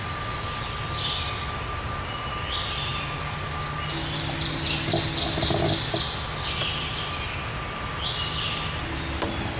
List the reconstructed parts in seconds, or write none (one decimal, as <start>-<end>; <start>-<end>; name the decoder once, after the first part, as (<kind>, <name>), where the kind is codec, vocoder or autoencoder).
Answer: none